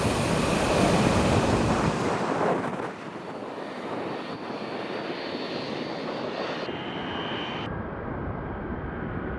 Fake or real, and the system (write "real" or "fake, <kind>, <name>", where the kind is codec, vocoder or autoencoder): real